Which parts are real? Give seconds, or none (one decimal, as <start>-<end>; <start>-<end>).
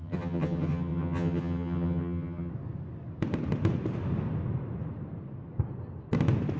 2.5-6.6